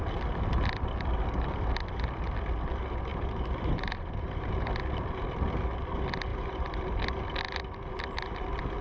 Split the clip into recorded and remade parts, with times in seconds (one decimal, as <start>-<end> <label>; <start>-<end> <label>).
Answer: 0.0-3.1 recorded; 3.1-4.7 remade; 4.7-6.3 recorded; 6.3-6.9 remade; 6.9-8.8 recorded